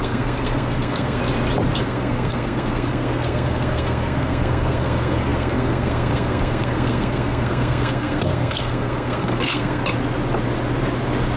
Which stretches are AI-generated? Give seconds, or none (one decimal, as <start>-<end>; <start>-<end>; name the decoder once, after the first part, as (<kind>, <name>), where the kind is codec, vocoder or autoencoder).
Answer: 0.0-1.2 (codec, SNAC); 1.8-9.8